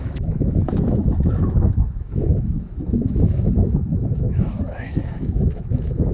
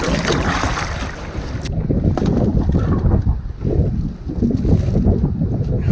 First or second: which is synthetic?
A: first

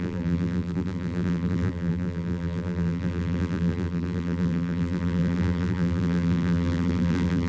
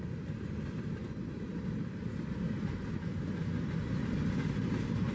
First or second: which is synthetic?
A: first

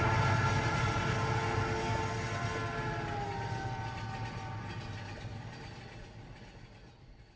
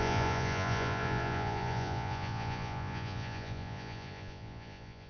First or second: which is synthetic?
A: second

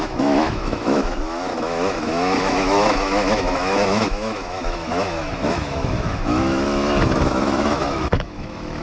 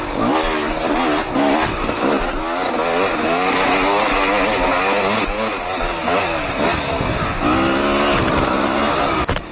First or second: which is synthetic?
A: first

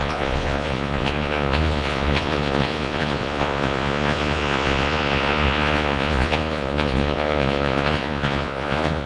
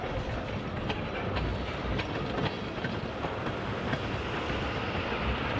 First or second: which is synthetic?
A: first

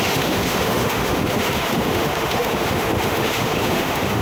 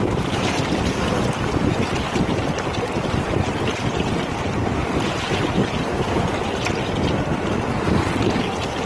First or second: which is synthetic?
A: first